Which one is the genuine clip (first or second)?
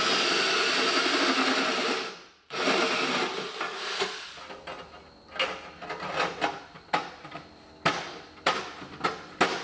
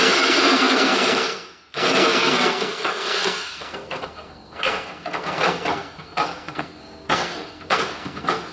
first